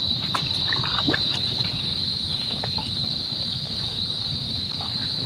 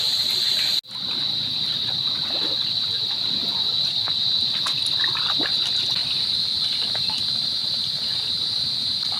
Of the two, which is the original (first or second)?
second